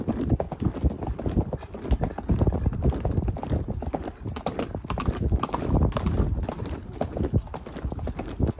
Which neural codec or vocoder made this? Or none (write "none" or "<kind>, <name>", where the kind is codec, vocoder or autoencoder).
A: none